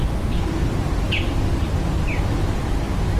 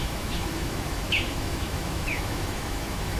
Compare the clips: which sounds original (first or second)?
first